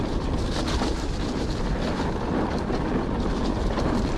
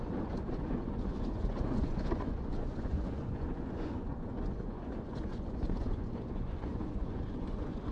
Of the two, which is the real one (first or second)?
first